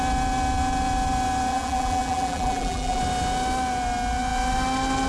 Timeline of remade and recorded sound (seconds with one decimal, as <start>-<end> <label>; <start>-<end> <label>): 0.0-1.5 recorded; 1.5-3.0 remade; 3.0-5.1 recorded